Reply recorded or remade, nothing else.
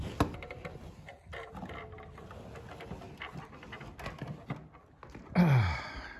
recorded